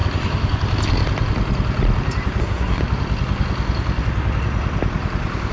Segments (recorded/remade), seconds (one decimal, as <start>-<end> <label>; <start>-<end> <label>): 0.0-2.4 recorded; 2.4-2.8 remade; 2.8-5.5 recorded